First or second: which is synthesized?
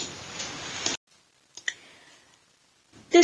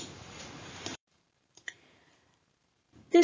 second